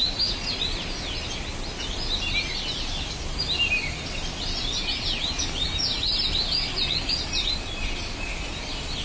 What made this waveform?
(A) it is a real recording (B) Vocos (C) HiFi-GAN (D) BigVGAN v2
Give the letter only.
A